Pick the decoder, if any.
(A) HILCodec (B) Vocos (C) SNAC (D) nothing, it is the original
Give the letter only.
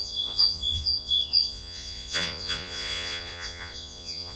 B